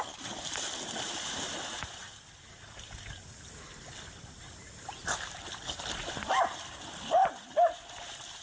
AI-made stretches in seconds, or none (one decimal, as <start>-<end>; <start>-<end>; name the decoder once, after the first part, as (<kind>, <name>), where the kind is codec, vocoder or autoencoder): none